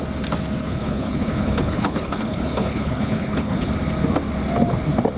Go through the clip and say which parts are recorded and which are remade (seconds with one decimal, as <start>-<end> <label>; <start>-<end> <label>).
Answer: 0.0-0.6 recorded; 0.6-3.7 remade; 3.7-5.2 recorded